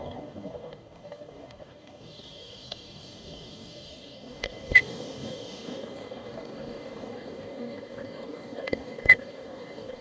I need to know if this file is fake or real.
fake